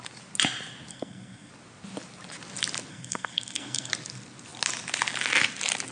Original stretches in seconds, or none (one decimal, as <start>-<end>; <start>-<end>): 0.0-0.9; 1.5-2.9; 3.9-5.9